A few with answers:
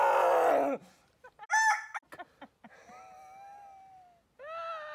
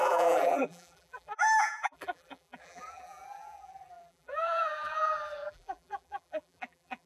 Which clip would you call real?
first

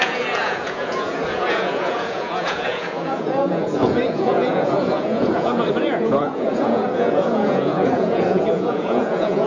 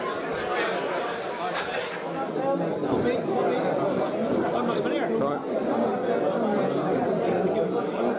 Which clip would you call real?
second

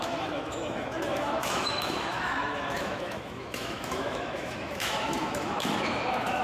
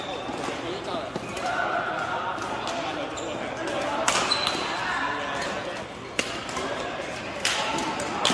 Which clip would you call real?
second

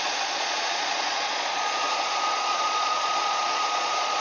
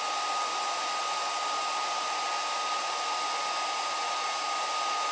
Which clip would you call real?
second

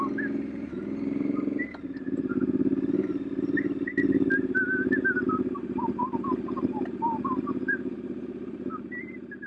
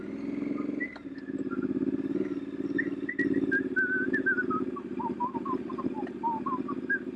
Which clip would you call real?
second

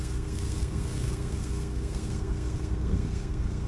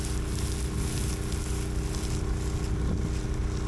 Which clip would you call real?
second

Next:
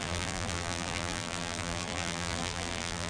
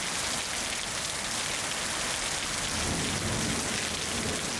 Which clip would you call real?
second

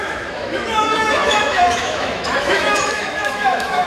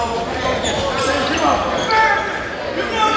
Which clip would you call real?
second